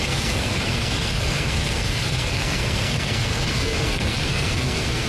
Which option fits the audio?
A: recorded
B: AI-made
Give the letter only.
B